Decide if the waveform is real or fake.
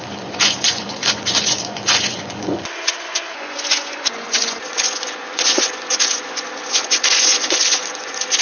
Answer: fake